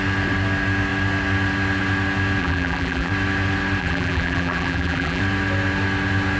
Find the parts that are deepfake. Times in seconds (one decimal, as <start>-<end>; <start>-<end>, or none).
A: 2.4-3.1; 3.8-5.2